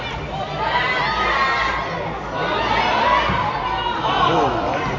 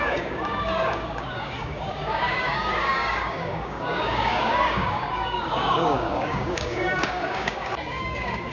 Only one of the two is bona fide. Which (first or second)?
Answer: first